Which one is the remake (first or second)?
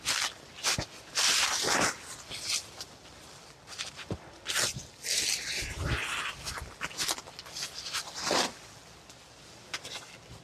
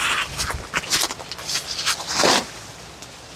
first